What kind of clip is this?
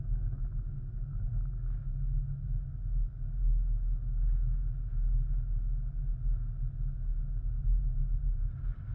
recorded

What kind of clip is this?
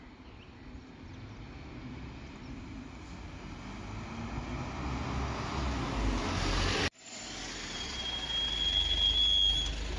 recorded